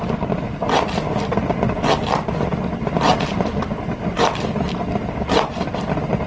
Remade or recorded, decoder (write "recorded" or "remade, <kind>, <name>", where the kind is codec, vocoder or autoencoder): recorded